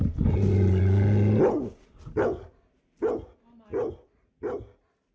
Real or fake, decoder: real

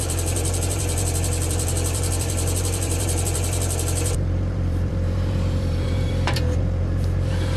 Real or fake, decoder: fake, vocoder, BigVGAN v2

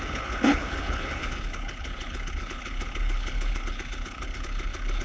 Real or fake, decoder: fake, codec, HILCodec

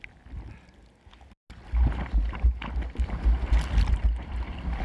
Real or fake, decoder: real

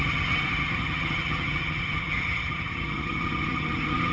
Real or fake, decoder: fake, vocoder, HiFi-GAN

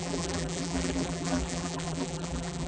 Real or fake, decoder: fake, vocoder, BigVGAN v2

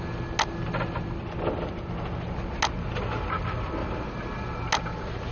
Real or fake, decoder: real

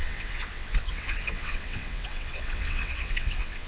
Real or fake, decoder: fake, vocoder, WaveNeXt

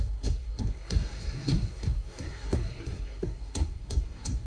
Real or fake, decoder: fake, codec, SNAC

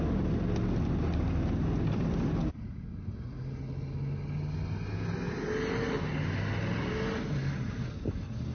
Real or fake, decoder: real